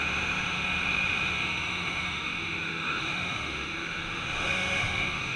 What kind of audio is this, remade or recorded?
remade